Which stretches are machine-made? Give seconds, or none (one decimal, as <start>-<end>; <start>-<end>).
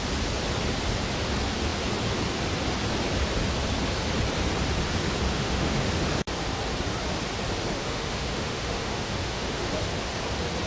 5.3-5.9; 7.8-9.8